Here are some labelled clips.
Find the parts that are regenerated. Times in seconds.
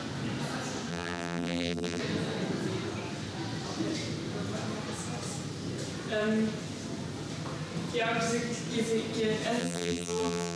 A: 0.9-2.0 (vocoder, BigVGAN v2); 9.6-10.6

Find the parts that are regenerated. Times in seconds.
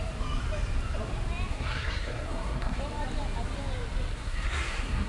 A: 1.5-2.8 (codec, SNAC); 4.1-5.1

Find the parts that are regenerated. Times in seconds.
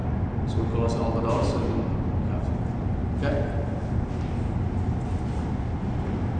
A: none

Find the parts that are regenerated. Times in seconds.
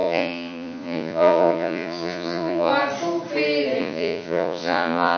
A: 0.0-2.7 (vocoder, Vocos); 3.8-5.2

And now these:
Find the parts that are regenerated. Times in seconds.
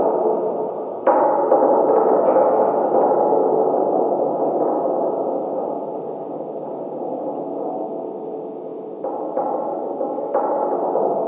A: 8.7-10.0 (vocoder, BigVGAN v2)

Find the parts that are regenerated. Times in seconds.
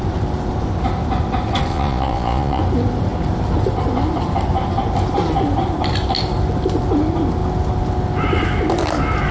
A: 1.7-2.6 (vocoder, Vocos)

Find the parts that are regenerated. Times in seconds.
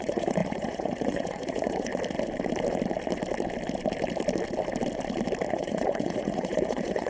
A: 0.0-1.9 (vocoder, Vocos); 5.5-7.1